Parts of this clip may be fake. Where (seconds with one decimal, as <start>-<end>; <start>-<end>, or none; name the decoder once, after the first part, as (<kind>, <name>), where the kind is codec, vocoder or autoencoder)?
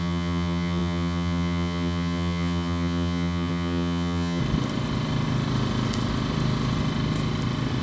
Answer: 0.0-4.4 (vocoder, HiFi-GAN)